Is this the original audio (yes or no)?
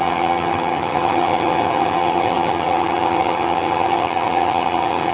no